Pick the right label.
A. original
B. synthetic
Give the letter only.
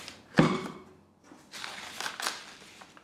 A